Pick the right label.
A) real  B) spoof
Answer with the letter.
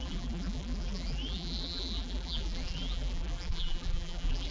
B